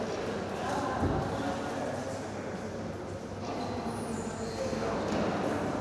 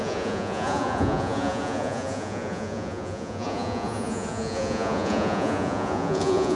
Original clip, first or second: first